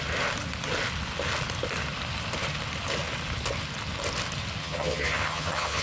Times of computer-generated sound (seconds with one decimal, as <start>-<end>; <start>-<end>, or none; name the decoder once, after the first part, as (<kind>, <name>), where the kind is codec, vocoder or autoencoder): 4.6-5.8 (vocoder, HiFi-GAN)